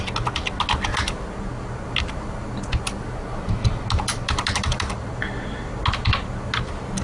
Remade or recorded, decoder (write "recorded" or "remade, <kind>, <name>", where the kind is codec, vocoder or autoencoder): recorded